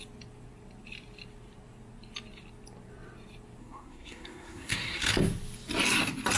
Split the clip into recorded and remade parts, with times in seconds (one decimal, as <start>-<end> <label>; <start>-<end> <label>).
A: 0.0-3.6 recorded; 3.6-5.1 remade; 5.1-6.4 recorded

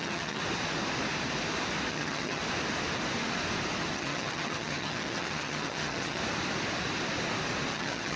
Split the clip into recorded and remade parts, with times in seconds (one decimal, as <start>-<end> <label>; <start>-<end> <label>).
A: 0.0-0.4 remade; 0.4-1.9 recorded; 1.9-2.4 remade; 2.4-3.9 recorded; 3.9-6.2 remade; 6.2-7.7 recorded; 7.7-8.2 remade

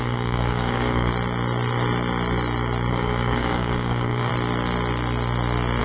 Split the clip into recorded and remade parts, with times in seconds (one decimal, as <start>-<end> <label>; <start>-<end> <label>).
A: 0.0-1.1 remade; 1.1-2.9 recorded; 2.9-4.3 remade; 4.3-5.8 recorded

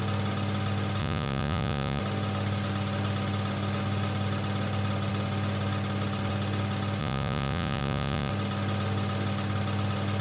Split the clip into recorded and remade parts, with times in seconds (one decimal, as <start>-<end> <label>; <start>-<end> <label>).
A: 0.0-1.0 recorded; 1.0-2.0 remade; 2.0-7.0 recorded; 7.0-8.3 remade; 8.3-10.2 recorded

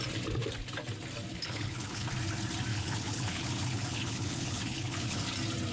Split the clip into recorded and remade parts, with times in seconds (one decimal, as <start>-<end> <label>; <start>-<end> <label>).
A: 0.0-1.3 recorded; 1.3-2.1 remade; 2.1-2.7 recorded; 2.7-5.2 remade; 5.2-5.7 recorded